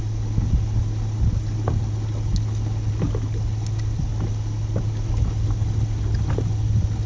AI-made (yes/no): no